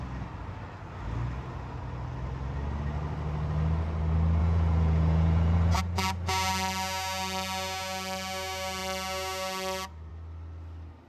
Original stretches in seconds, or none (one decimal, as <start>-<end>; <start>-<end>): 0.0-4.4; 5.8-11.1